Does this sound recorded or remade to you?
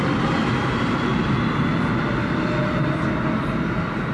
recorded